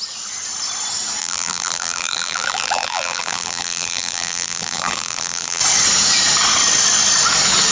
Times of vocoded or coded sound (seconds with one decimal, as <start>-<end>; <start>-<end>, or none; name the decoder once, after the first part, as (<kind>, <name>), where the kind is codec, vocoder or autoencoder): 1.2-5.6 (vocoder, BigVGAN v2)